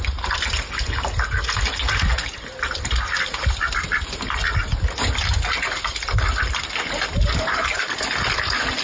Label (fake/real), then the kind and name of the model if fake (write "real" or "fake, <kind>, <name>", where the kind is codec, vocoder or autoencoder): real